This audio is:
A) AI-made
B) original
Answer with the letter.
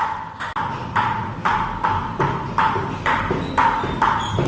B